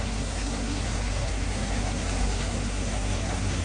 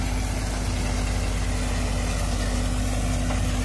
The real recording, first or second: second